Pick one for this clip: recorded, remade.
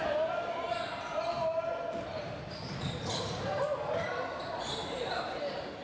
recorded